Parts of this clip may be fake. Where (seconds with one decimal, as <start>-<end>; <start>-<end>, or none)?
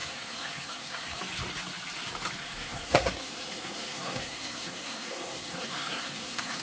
0.0-1.2; 2.4-6.6